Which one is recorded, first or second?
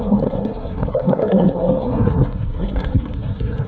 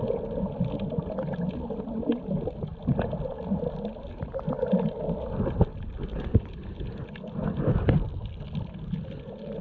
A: second